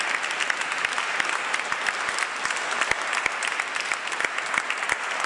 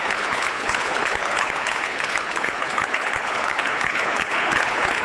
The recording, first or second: first